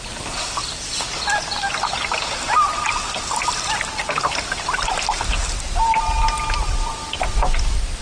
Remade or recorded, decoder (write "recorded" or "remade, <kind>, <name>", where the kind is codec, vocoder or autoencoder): recorded